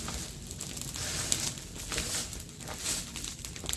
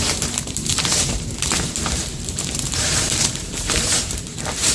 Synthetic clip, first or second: second